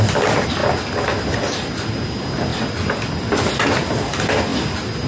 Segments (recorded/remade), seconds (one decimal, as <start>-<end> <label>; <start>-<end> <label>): 0.0-5.1 recorded